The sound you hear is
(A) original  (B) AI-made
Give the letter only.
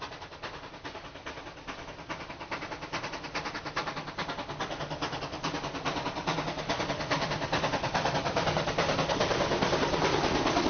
A